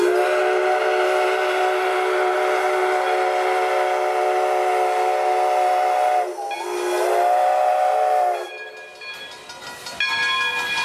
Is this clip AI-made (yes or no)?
no